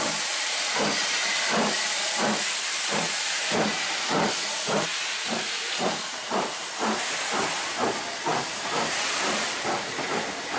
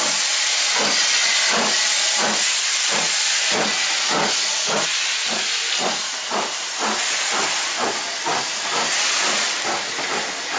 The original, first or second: second